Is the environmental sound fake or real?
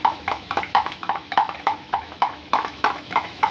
fake